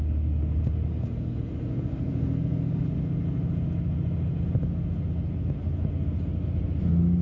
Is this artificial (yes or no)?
no